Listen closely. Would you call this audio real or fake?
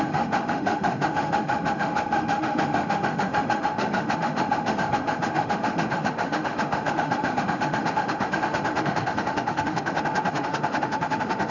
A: fake